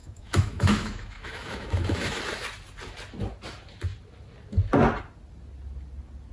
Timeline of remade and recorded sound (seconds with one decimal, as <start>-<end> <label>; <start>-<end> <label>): 0.0-2.2 remade; 2.2-6.3 recorded